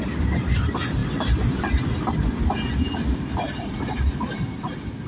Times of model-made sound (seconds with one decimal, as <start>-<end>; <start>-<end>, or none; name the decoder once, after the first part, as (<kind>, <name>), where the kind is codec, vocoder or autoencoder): none